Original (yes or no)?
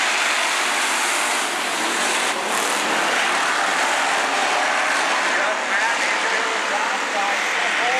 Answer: yes